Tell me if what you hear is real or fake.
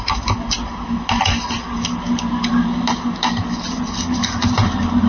real